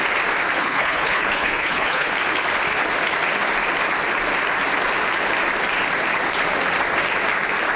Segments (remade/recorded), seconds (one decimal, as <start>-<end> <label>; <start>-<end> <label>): 0.0-0.6 recorded; 0.6-2.1 remade; 2.1-7.8 recorded